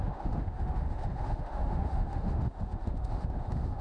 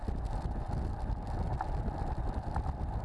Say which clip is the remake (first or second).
first